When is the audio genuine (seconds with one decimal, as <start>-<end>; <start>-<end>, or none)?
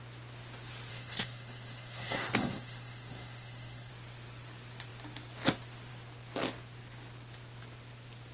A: 0.0-0.9; 3.9-8.3